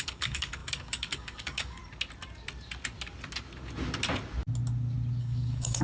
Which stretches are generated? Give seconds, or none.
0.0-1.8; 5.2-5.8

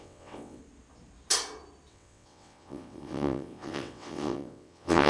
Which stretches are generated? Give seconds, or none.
0.0-0.6; 1.9-5.1

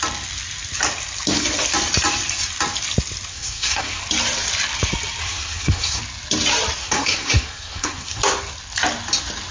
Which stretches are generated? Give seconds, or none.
3.3-4.0; 5.2-6.0; 6.8-8.2

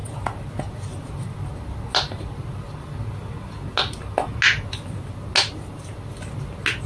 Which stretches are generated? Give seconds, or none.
none